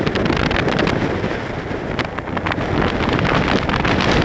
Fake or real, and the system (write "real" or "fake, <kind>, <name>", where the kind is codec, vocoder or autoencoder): real